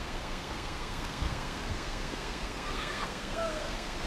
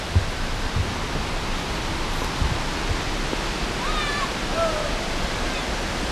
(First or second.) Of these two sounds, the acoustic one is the second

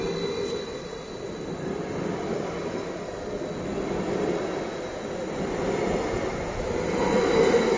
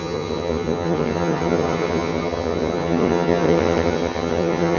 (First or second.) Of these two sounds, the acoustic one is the first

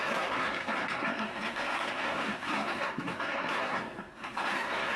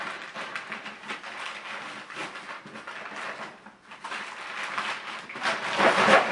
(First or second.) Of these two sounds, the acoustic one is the second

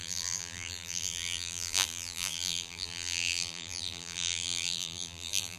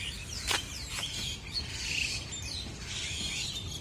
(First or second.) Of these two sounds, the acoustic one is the second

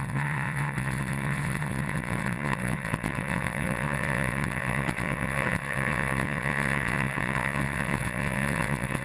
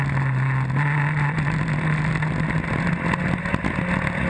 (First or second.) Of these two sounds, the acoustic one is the second